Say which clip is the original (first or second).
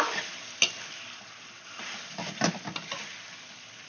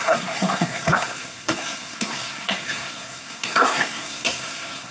first